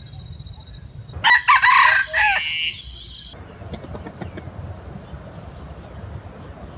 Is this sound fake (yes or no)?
no